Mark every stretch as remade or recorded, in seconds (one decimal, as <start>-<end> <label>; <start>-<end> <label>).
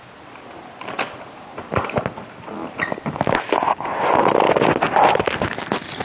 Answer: 0.0-6.0 recorded